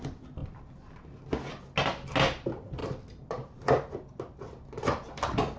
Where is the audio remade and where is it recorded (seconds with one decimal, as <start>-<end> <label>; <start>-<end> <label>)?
0.0-5.6 recorded